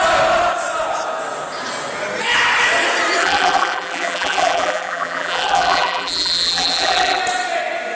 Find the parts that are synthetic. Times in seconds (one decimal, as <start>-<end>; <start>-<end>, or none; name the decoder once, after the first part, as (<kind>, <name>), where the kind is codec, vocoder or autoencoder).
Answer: 3.2-7.2 (vocoder, BigVGAN v2)